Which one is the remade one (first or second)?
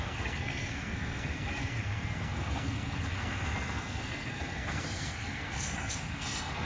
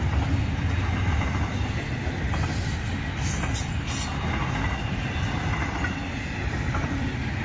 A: first